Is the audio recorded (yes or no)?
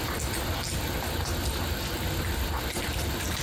yes